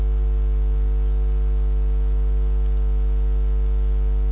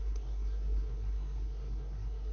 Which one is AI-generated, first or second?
second